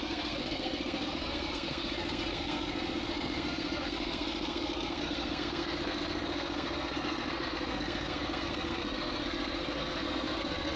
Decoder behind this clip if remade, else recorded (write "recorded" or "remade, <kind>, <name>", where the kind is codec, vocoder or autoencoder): remade, codec, SNAC